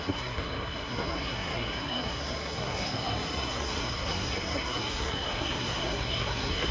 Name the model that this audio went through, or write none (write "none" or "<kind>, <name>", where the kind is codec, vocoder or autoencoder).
codec, SNAC